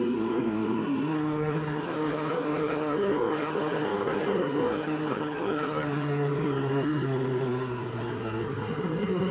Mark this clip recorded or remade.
remade